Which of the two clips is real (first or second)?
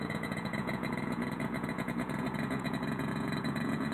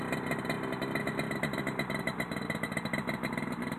second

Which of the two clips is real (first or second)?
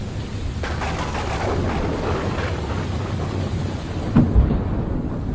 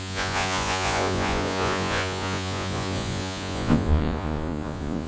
first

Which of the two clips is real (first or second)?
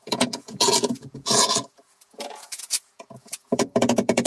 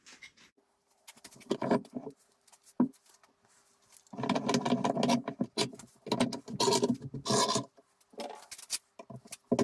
second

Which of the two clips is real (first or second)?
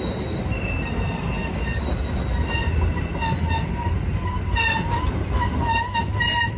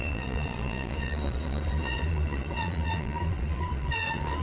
first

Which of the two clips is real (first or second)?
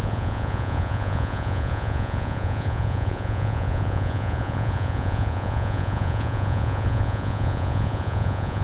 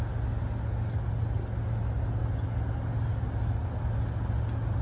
second